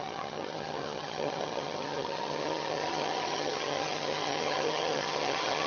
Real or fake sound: fake